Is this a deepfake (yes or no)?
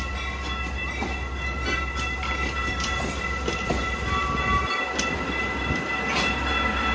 no